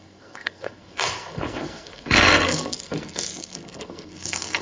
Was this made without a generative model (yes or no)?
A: no